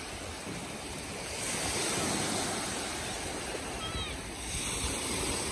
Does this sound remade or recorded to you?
recorded